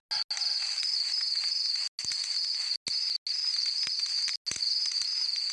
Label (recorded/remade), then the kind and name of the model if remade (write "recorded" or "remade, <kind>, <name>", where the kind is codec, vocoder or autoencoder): recorded